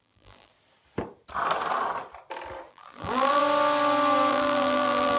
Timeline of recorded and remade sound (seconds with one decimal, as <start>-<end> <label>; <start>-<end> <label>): 0.0-0.5 remade; 0.5-2.7 recorded; 2.7-3.4 remade; 3.4-4.3 recorded; 4.3-5.2 remade